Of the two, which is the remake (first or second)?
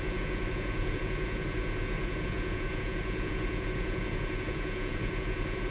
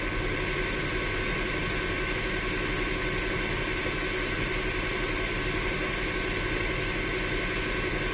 first